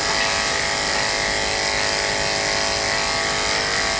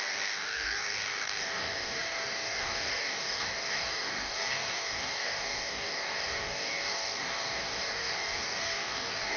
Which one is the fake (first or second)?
second